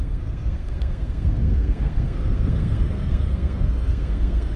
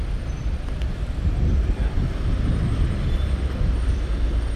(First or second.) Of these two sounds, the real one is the second